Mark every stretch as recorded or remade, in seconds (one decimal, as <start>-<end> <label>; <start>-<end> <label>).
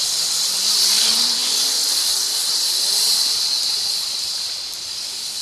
0.0-5.4 remade